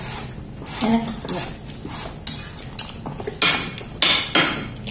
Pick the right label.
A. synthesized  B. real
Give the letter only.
B